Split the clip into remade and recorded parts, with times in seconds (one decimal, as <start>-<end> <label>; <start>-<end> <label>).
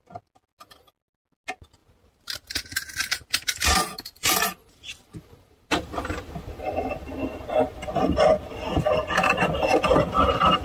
0.0-1.8 recorded; 1.8-6.2 remade; 6.2-10.6 recorded